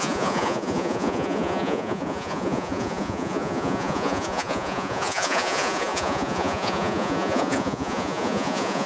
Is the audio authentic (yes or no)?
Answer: no